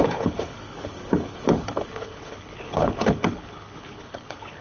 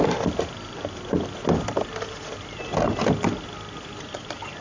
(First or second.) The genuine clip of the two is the second